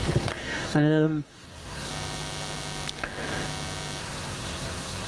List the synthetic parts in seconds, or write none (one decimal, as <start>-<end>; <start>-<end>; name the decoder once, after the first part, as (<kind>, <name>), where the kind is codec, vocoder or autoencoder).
0.0-1.9 (codec, SNAC); 4.0-5.1